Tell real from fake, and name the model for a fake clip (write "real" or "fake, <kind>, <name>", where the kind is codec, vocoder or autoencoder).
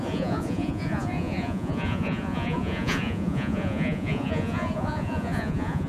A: fake, vocoder, Vocos